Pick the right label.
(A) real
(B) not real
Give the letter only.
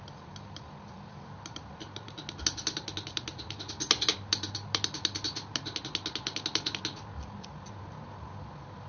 A